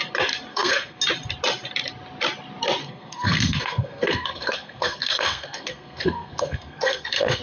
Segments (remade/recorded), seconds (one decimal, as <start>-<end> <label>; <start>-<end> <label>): 0.0-0.5 recorded; 0.5-1.0 remade; 1.0-2.8 recorded; 2.8-7.4 remade